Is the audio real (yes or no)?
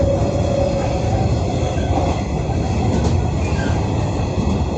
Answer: yes